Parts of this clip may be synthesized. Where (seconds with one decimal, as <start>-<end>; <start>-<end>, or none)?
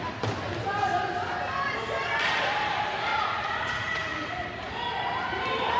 3.1-4.3